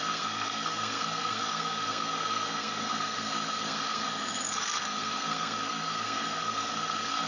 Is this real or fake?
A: fake